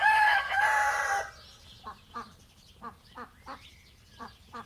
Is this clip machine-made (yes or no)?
yes